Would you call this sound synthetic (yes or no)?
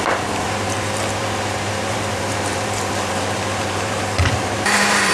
yes